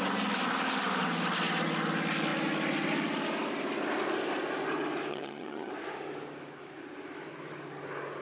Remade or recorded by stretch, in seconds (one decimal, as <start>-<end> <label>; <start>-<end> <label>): 0.0-5.1 recorded; 5.1-5.7 remade; 5.7-8.2 recorded